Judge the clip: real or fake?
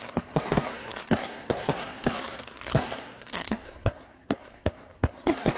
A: fake